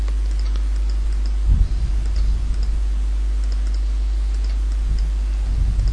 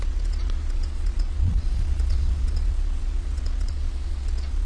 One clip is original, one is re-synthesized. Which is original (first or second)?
first